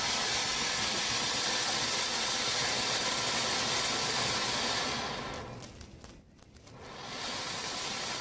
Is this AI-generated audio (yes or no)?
no